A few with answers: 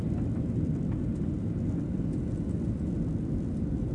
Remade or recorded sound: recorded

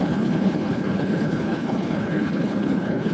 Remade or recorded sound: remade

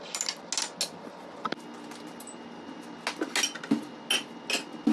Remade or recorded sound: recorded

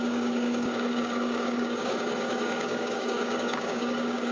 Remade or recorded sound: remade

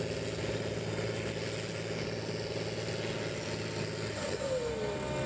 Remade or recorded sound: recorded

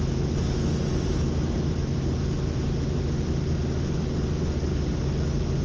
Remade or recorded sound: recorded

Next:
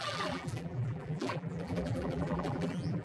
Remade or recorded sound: remade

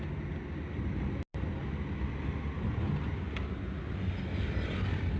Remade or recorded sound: recorded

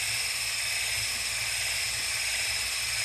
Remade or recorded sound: recorded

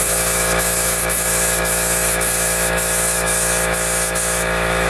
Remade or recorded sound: remade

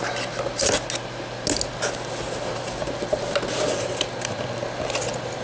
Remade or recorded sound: recorded